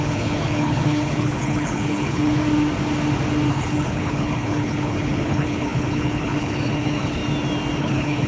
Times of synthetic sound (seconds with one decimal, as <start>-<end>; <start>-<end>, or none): 0.0-2.4; 3.5-7.2; 7.8-8.3

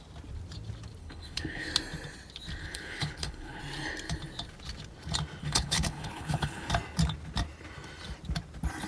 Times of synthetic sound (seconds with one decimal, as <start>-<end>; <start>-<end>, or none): 1.0-1.7; 2.6-3.6; 5.4-6.7

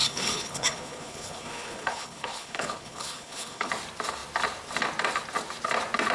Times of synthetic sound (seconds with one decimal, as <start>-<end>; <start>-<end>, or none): 0.0-3.7

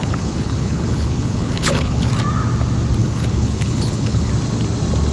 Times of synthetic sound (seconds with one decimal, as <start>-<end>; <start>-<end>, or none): 0.0-2.1; 3.0-4.3

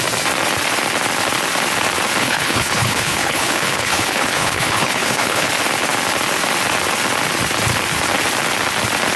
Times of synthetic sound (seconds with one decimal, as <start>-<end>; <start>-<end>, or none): 2.2-5.5

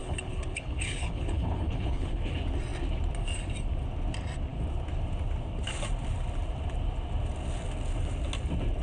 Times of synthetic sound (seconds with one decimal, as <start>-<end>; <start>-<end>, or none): 0.0-2.2